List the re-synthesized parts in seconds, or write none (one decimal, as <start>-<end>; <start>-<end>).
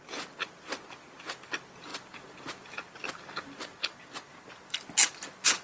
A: none